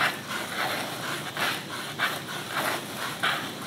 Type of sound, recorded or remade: recorded